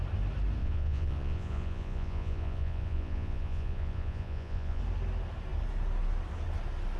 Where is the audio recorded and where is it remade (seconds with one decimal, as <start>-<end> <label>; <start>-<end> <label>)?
0.0-0.6 recorded; 0.6-4.8 remade; 4.8-7.0 recorded